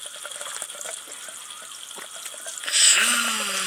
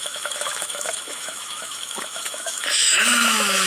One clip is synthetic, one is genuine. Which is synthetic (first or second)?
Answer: second